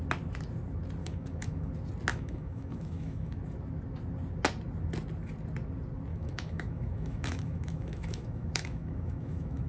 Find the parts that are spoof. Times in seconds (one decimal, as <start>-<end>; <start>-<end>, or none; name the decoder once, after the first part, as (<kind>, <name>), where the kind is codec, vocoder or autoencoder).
1.0-1.7 (autoencoder, DAC-VAE); 2.1-3.4; 6.1-9.7